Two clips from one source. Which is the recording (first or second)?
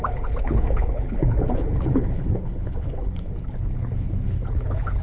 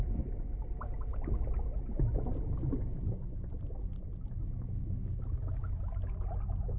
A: second